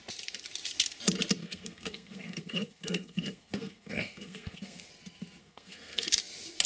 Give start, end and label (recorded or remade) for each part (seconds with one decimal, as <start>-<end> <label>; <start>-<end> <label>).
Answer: 0.0-1.4 recorded; 1.4-4.9 remade; 4.9-5.4 recorded; 5.4-6.1 remade; 6.1-6.7 recorded